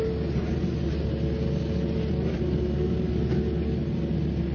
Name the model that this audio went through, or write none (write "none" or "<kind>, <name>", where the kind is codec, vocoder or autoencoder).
none